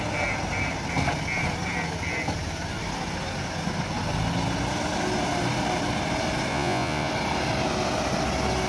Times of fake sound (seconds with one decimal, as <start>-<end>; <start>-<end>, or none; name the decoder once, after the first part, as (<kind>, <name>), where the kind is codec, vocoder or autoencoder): 6.5-7.1 (vocoder, Vocos)